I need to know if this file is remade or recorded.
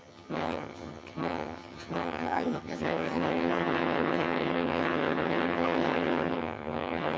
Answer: remade